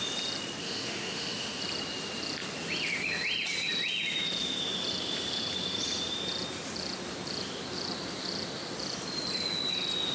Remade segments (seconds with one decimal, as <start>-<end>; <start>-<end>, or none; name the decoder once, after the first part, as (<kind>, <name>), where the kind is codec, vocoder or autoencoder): 0.6-1.6 (autoencoder, DAC-VAE)